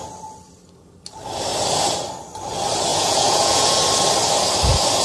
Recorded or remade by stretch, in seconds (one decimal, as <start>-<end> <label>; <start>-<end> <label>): 0.0-2.9 recorded; 2.9-3.8 remade; 3.8-5.0 recorded